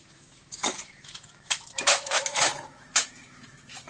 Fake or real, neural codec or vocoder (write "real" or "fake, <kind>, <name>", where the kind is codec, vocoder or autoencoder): fake, autoencoder, DAC-VAE